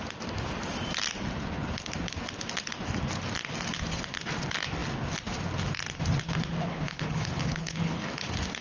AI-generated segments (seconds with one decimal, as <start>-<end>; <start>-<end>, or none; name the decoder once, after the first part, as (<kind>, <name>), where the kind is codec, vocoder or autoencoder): 6.7-8.1 (codec, HILCodec)

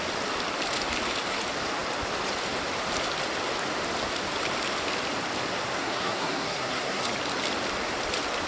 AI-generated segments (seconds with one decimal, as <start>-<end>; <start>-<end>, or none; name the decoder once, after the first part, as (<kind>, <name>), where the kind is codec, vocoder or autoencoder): 5.8-7.0 (codec, SNAC)